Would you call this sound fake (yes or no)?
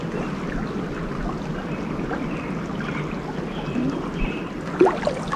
no